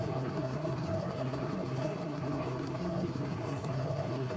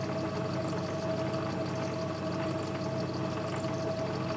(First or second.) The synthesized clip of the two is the first